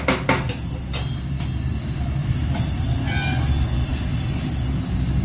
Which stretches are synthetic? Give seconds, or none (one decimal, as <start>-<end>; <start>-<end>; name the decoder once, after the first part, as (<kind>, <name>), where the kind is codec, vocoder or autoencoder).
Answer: 2.2-2.8 (vocoder, BigVGAN v2)